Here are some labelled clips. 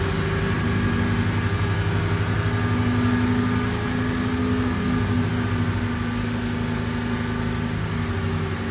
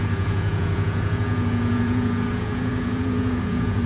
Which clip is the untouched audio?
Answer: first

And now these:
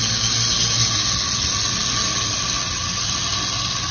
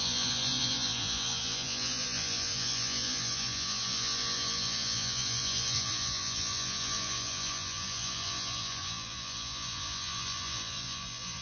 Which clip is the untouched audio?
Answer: first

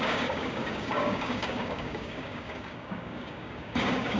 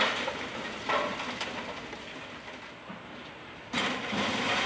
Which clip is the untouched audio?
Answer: second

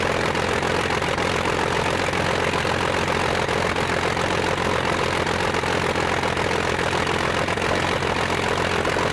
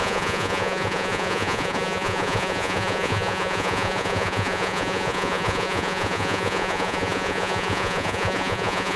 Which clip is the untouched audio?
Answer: first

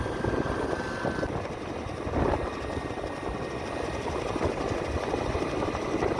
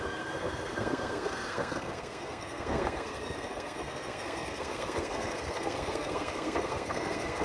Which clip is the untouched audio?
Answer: first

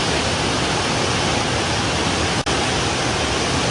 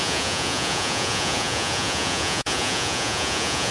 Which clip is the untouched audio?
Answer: first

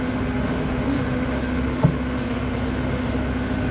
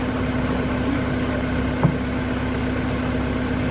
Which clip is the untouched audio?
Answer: second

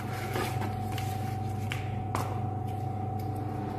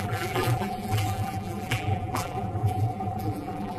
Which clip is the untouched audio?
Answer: first